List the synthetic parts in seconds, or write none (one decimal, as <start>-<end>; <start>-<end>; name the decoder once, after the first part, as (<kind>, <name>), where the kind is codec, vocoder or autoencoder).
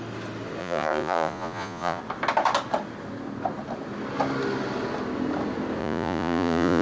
0.6-2.0 (vocoder, Vocos); 5.8-6.8